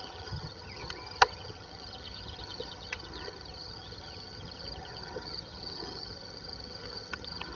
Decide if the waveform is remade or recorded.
remade